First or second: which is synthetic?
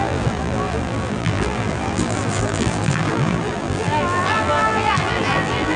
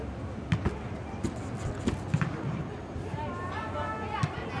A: first